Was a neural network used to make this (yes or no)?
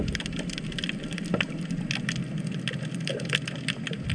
no